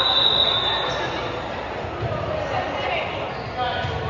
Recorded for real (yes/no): yes